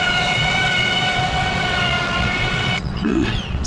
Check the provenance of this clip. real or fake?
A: fake